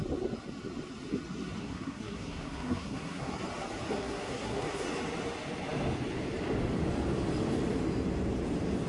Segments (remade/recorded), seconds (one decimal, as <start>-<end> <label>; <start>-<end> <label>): 0.0-1.6 recorded; 1.6-3.3 remade; 3.3-3.9 recorded; 3.9-4.9 remade; 4.9-8.9 recorded